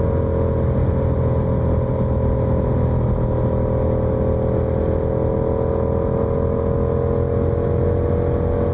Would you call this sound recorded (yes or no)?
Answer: yes